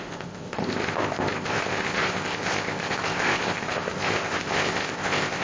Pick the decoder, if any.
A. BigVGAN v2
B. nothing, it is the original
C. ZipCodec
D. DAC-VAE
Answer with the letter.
C